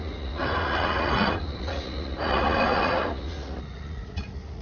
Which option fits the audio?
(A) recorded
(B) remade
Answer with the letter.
B